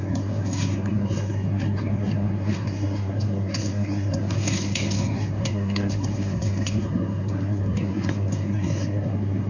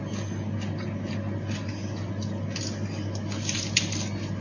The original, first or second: second